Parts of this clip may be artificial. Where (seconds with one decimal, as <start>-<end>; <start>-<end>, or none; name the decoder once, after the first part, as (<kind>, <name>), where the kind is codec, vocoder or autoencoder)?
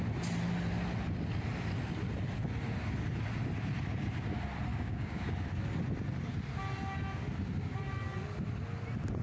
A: 4.7-5.3 (codec, DAC)